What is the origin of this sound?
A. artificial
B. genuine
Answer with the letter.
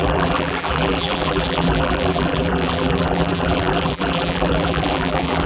A